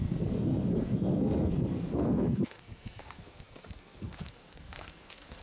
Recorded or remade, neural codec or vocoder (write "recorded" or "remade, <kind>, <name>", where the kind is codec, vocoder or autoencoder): remade, codec, SNAC